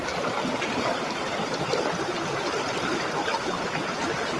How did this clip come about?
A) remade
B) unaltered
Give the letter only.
B